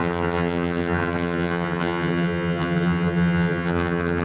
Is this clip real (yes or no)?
no